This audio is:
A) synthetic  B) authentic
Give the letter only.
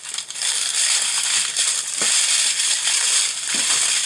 B